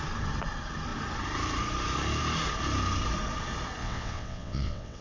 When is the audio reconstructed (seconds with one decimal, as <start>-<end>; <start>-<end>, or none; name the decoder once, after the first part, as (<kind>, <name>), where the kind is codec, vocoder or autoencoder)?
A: 3.8-5.0 (vocoder, WaveNeXt)